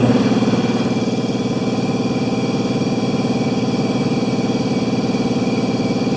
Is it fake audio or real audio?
real